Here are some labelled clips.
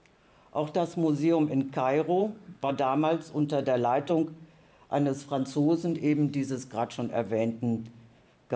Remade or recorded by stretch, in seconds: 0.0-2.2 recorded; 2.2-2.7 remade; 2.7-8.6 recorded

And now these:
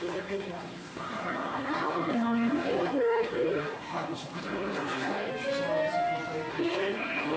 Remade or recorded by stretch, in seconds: 0.0-5.3 remade; 5.3-6.5 recorded; 6.5-7.4 remade